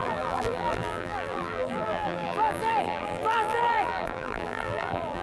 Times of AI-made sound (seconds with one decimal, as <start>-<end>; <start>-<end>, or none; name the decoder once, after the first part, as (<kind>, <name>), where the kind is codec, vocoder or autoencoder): 0.0-5.2 (vocoder, BigVGAN v2)